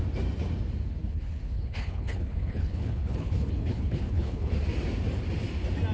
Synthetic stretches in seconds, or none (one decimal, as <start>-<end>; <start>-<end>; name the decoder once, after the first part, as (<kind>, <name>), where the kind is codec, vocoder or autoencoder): 1.0-4.5 (codec, HILCodec)

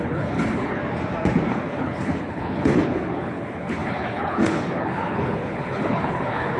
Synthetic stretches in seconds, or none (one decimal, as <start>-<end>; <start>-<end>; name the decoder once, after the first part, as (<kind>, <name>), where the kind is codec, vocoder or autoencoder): 0.0-0.8 (codec, HILCodec); 1.5-6.6